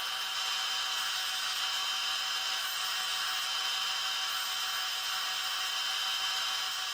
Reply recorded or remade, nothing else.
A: recorded